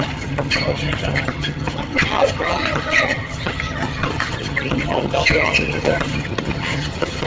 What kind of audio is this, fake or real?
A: fake